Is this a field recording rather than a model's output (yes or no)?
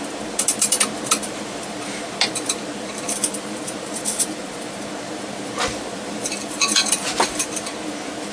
no